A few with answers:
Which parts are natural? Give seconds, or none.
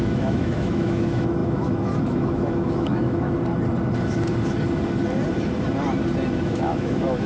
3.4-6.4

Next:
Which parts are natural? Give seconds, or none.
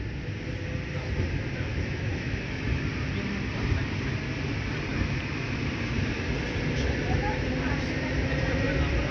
0.0-1.7; 2.8-9.1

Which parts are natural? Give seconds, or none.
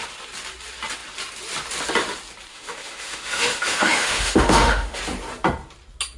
0.0-2.5; 5.0-6.2